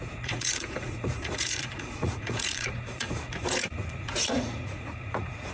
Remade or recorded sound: remade